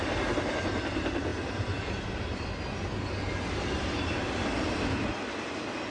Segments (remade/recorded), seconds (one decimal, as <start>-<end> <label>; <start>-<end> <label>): 0.0-5.9 recorded